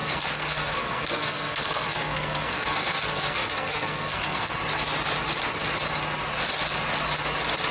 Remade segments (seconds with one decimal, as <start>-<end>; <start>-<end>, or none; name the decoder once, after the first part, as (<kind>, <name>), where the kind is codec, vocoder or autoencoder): 0.0-4.6 (codec, SNAC)